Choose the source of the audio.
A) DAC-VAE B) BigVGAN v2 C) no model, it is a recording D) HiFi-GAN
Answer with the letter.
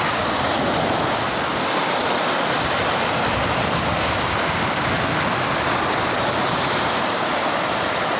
C